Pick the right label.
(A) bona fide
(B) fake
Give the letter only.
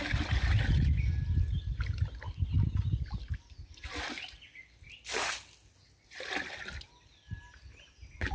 A